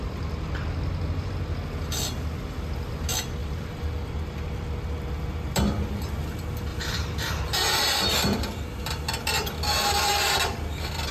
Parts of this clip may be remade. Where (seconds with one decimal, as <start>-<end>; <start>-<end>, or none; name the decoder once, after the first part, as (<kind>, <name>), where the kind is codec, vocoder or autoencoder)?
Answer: 3.4-4.1 (vocoder, BigVGAN v2); 6.7-7.3